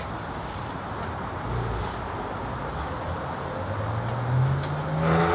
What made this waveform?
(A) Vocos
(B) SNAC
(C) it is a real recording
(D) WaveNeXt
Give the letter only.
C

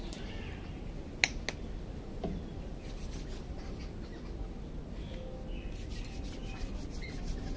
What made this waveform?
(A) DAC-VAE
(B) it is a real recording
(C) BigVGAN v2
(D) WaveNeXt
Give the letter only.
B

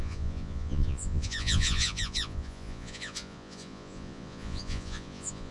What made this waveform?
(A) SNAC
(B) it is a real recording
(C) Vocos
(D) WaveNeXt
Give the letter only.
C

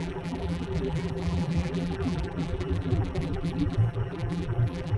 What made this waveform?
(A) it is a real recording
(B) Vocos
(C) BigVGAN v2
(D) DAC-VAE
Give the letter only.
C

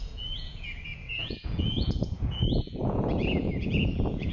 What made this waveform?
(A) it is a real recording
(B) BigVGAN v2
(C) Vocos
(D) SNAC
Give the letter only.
C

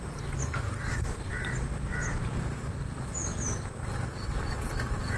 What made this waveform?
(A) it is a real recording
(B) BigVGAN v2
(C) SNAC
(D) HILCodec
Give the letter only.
A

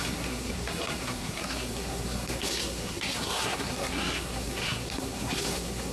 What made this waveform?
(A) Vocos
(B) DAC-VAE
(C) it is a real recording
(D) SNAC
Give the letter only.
D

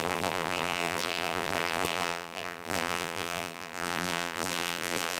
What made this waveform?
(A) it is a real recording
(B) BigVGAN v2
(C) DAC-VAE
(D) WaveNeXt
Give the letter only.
B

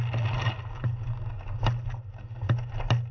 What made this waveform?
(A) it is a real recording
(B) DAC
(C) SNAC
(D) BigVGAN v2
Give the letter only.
A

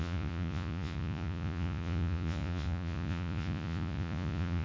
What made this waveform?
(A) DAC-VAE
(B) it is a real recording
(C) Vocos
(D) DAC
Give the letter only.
C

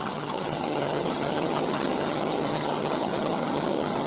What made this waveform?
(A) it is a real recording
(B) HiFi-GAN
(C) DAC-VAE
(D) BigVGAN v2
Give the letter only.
B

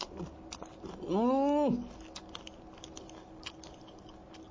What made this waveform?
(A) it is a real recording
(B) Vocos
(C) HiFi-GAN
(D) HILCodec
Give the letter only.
A